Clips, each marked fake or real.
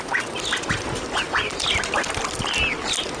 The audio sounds real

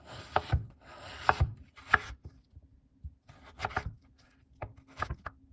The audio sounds real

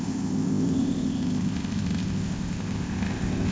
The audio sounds fake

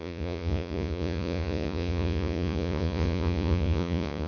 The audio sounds fake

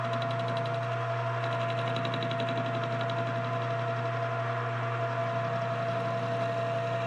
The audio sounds real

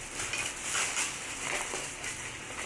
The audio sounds fake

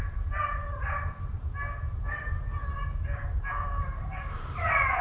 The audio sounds real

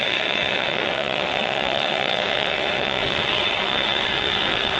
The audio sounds fake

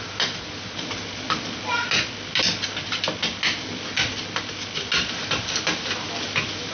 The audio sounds real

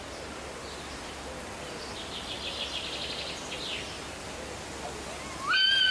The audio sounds real